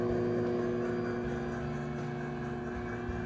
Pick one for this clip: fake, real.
real